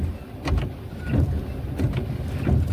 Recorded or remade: recorded